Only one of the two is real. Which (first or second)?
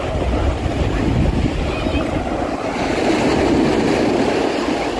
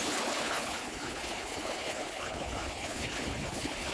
first